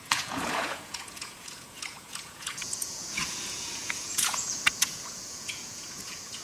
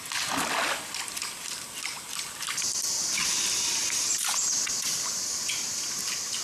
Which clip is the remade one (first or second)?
first